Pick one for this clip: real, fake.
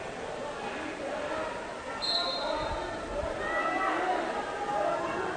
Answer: real